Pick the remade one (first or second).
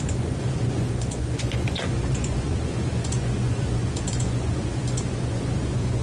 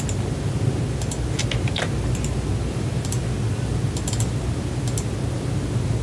first